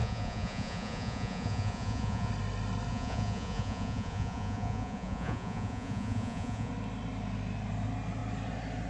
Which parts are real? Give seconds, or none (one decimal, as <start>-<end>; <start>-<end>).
2.3-2.9; 6.7-8.9

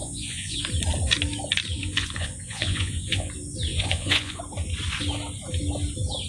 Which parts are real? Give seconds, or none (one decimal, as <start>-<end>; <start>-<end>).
0.6-1.8; 3.3-3.7; 4.4-6.3